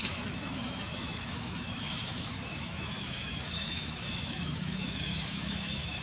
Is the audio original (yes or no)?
no